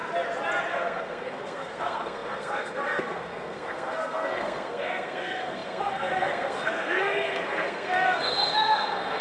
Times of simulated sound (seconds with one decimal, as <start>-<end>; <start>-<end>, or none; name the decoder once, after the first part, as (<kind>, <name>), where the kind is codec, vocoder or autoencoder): 0.7-9.2 (codec, SNAC)